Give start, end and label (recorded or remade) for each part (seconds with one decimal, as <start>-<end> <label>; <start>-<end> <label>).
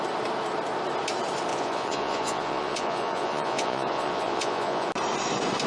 0.0-1.5 recorded; 1.5-4.9 remade; 4.9-5.7 recorded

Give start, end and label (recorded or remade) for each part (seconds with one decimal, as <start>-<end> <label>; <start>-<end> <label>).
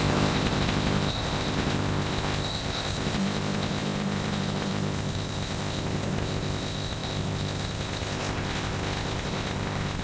0.0-10.0 remade